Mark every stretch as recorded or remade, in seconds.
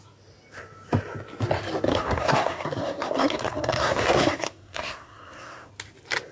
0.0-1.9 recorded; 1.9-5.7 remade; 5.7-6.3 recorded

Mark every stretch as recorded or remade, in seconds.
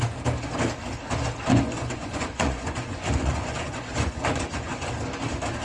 0.0-1.5 recorded; 1.5-4.9 remade; 4.9-5.6 recorded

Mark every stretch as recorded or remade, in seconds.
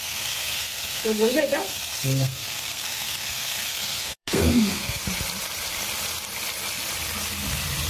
0.0-5.0 remade; 5.0-7.9 recorded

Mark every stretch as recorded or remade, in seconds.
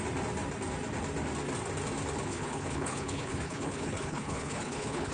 0.0-2.3 recorded; 2.3-5.1 remade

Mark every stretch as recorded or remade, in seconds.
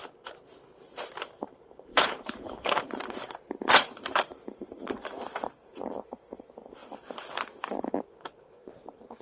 0.0-6.8 remade; 6.8-7.6 recorded; 7.6-9.2 remade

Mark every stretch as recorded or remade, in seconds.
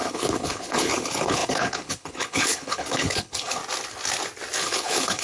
0.0-3.6 remade; 3.6-4.6 recorded; 4.6-5.2 remade